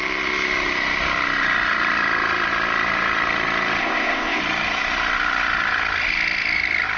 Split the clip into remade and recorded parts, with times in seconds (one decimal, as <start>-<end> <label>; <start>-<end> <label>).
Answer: 0.0-3.8 recorded; 3.8-4.4 remade; 4.4-7.0 recorded